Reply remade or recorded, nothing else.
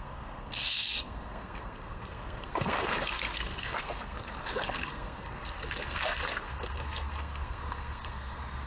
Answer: remade